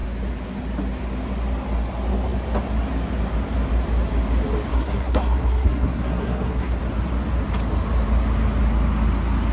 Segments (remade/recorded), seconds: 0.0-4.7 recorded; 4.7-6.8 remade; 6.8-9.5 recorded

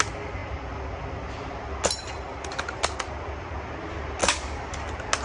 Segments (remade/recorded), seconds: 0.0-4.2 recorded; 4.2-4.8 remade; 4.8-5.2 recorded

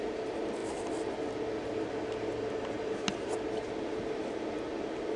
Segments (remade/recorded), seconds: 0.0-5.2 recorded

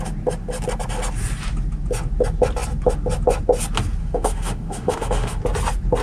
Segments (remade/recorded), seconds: 0.0-4.0 recorded; 4.0-5.4 remade; 5.4-6.0 recorded